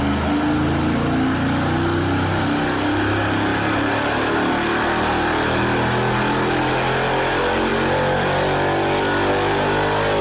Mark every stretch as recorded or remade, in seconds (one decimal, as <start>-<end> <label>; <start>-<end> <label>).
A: 0.0-10.2 recorded